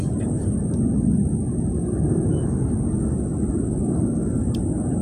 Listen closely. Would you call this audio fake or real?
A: real